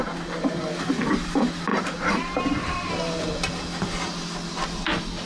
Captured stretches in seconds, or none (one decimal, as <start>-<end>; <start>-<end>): 0.0-1.7; 2.9-5.3